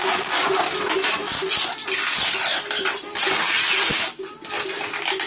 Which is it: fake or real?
real